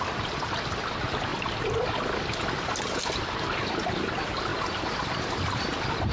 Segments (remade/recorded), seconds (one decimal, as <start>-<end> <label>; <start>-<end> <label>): 0.0-6.1 recorded